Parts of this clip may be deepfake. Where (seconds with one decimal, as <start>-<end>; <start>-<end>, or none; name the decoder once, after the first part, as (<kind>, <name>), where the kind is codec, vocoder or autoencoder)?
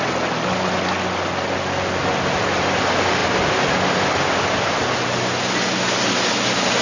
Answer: none